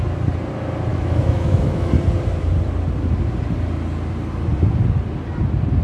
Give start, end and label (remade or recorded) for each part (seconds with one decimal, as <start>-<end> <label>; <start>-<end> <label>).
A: 0.0-0.9 recorded; 0.9-1.9 remade; 1.9-5.8 recorded